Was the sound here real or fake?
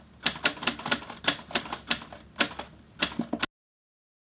real